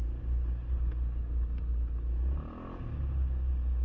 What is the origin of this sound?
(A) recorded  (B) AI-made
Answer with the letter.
A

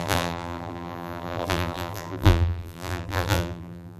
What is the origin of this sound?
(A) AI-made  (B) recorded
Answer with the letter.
A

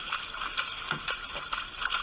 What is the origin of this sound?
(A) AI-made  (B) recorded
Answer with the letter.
B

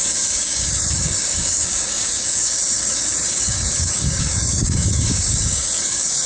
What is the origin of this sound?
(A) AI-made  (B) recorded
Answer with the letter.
A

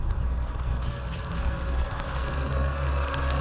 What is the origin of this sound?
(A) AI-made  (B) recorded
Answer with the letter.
A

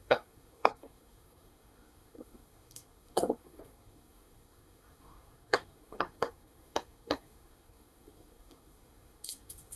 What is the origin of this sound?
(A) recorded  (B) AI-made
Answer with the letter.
B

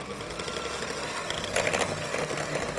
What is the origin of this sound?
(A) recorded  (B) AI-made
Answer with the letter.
A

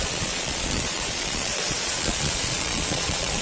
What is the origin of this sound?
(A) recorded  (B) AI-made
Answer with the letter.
B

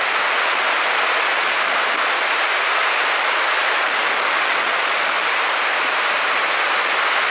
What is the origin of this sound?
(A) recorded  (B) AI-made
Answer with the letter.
A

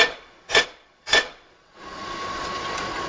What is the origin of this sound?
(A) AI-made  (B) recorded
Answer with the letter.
A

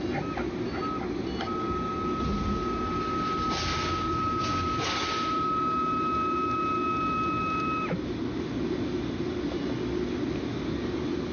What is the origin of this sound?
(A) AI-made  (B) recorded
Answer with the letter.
B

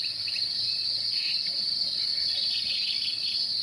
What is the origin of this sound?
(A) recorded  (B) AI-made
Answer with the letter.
B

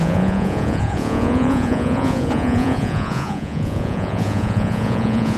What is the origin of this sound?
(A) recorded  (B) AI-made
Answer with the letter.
B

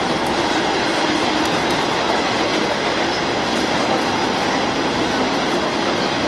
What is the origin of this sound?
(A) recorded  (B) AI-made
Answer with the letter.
A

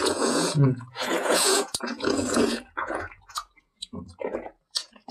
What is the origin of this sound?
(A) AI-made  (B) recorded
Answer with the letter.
A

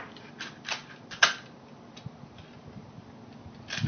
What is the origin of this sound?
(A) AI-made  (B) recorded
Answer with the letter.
B